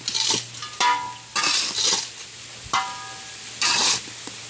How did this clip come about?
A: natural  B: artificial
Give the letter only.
A